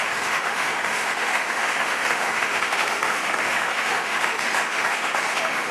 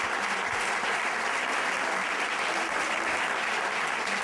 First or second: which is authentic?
second